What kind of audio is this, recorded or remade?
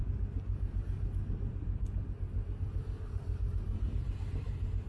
recorded